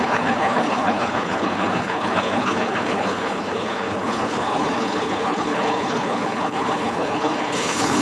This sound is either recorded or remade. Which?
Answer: remade